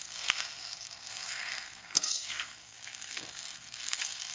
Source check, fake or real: fake